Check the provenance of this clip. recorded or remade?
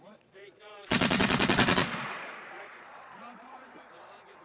remade